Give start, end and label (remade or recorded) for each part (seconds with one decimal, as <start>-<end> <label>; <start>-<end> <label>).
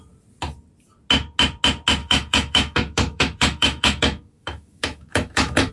0.0-2.0 recorded; 2.0-5.7 remade